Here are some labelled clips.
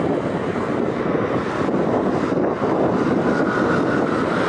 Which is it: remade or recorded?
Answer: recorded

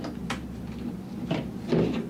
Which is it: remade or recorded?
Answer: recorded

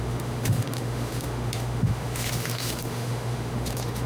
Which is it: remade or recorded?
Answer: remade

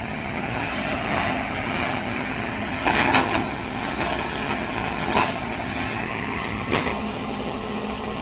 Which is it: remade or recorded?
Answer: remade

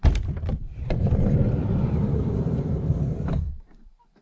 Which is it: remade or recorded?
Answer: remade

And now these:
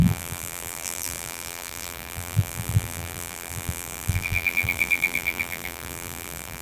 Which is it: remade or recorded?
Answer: remade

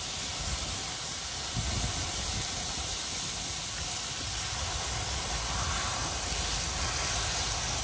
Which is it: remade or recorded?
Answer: recorded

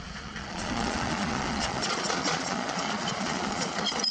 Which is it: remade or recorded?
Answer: remade